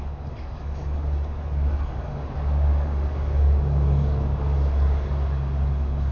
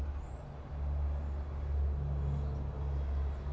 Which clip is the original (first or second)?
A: second